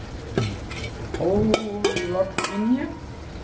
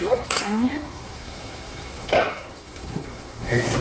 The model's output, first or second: second